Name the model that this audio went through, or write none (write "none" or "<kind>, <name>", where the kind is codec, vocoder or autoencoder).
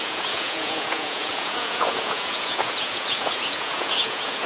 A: vocoder, Vocos